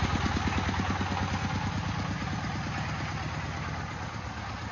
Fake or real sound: real